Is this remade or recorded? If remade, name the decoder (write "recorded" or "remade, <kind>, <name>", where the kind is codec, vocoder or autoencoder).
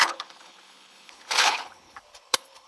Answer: remade, codec, HILCodec